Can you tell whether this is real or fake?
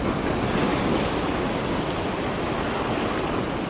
real